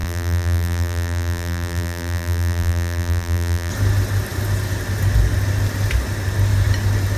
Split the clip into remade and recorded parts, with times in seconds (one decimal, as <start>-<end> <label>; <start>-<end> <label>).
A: 0.0-3.7 remade; 3.7-7.2 recorded